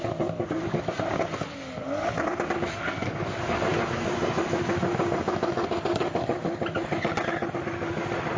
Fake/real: real